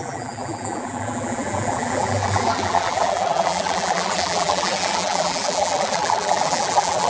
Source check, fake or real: fake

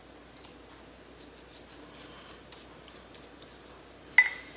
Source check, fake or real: real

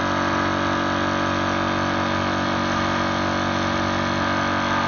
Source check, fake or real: real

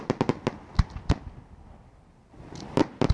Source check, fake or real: real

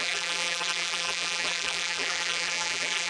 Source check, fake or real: fake